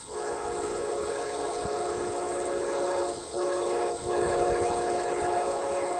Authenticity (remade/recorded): remade